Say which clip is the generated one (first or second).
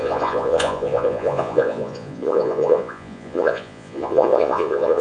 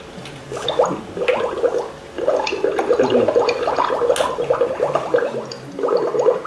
first